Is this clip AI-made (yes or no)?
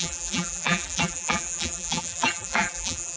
yes